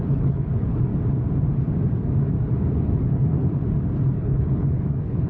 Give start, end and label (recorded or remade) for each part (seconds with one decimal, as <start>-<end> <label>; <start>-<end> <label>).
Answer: 0.0-0.9 remade; 0.9-2.7 recorded; 2.7-3.5 remade; 3.5-4.2 recorded; 4.2-5.3 remade